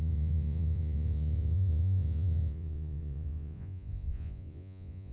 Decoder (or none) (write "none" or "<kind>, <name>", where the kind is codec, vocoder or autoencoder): vocoder, Vocos